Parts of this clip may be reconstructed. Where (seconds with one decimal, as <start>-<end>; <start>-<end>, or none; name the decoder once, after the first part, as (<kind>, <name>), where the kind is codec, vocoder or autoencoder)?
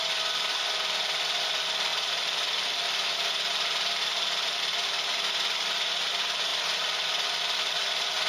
none